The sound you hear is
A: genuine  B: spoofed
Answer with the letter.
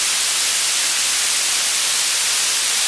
A